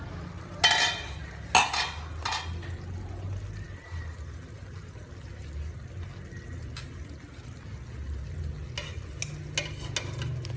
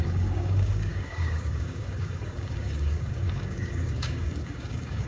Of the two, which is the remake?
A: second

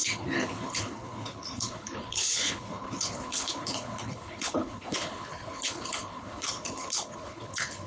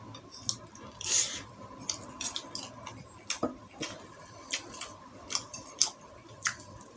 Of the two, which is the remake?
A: first